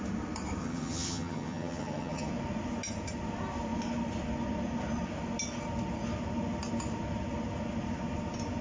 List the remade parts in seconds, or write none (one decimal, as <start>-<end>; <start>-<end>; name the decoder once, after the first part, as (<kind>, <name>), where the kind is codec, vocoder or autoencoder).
0.6-2.3 (vocoder, HiFi-GAN)

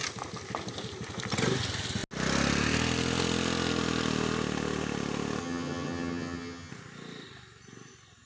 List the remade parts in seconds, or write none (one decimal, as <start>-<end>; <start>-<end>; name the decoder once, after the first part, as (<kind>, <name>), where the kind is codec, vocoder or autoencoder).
5.4-6.7 (vocoder, HiFi-GAN)

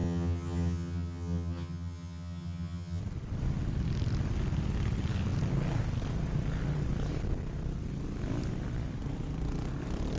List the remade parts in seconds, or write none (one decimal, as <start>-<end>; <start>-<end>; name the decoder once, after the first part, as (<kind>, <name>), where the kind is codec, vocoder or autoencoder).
0.0-3.0 (vocoder, HiFi-GAN)

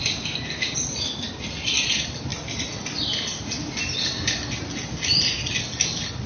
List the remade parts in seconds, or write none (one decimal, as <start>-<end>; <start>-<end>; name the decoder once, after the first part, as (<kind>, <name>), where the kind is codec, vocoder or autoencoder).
none

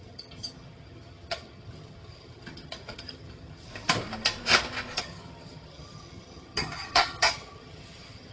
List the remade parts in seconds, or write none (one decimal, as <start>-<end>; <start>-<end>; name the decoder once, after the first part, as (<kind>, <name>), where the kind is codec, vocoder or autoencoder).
0.0-3.7 (vocoder, HiFi-GAN); 5.0-8.3

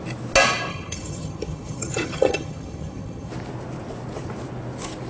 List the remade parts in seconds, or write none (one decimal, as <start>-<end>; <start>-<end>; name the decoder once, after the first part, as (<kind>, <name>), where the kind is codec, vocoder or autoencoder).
0.7-3.3 (vocoder, HiFi-GAN)

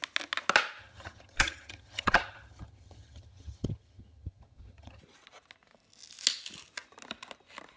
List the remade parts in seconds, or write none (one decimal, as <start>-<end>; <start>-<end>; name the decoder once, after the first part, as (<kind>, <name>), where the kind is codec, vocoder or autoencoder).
0.8-5.0 (vocoder, HiFi-GAN)

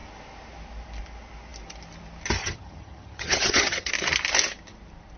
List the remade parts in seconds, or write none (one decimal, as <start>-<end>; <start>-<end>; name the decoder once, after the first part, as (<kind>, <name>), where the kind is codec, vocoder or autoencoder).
2.4-3.9 (vocoder, HiFi-GAN)